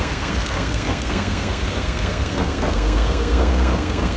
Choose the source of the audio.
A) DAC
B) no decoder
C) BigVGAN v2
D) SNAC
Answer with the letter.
D